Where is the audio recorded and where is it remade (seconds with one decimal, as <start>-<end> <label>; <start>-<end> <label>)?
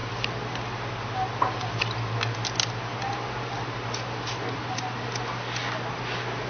0.0-2.9 recorded; 2.9-4.7 remade; 4.7-6.5 recorded